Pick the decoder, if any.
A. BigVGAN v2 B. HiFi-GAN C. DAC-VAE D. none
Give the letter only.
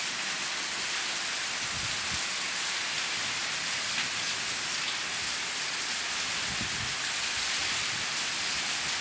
D